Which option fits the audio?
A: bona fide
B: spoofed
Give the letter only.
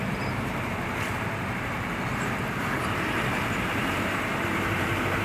B